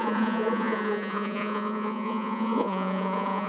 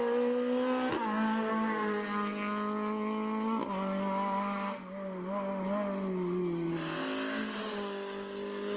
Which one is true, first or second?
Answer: second